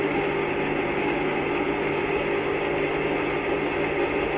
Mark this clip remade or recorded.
recorded